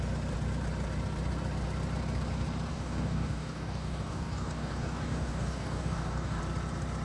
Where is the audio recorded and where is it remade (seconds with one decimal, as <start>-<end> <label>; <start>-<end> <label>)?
0.0-2.7 recorded; 2.7-6.4 remade; 6.4-7.0 recorded